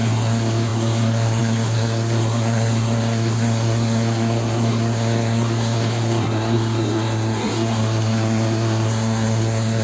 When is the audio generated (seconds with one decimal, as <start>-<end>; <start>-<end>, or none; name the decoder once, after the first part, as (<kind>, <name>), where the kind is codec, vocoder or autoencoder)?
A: 0.0-9.8 (codec, SNAC)